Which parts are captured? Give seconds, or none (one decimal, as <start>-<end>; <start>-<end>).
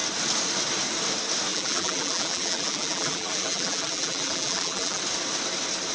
0.0-1.5; 5.0-5.9